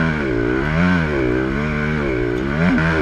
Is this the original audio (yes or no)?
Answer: yes